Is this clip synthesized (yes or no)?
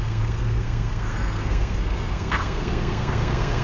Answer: yes